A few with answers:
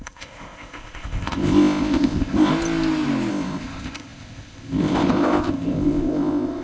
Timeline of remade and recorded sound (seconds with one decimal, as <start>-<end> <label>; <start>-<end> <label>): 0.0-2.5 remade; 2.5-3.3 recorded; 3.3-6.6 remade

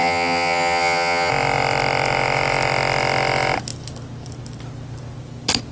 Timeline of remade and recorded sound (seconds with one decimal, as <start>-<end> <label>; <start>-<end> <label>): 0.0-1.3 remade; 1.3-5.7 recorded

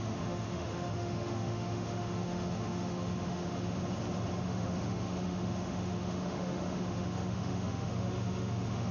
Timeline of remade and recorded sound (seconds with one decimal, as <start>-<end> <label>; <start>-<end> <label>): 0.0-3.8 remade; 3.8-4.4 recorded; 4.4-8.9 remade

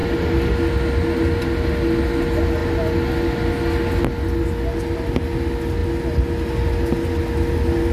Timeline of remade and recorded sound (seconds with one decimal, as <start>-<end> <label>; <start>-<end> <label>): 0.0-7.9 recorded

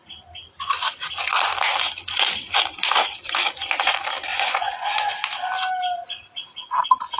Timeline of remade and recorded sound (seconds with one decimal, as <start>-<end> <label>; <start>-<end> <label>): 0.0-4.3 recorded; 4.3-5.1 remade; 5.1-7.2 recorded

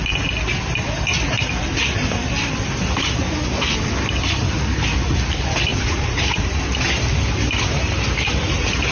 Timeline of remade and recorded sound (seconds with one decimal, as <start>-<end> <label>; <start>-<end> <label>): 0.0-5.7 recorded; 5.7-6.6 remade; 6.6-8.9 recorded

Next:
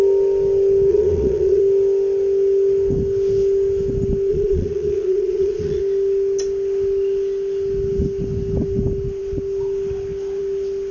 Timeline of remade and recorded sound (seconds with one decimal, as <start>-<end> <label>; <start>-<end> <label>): 0.0-0.9 recorded; 0.9-1.6 remade; 1.6-4.3 recorded; 4.3-5.8 remade; 5.8-10.9 recorded

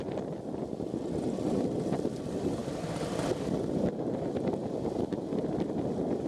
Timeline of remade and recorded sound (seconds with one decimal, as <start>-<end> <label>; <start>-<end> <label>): 0.0-6.3 remade